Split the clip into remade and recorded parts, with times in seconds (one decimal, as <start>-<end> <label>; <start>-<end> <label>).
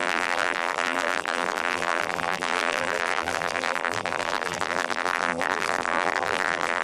0.0-6.8 remade